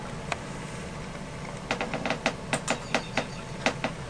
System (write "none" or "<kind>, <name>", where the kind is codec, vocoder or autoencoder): none